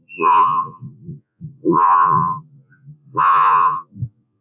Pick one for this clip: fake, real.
fake